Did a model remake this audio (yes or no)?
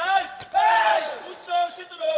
yes